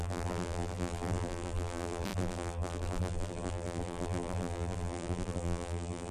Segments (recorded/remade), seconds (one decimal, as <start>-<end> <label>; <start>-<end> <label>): 0.0-6.1 remade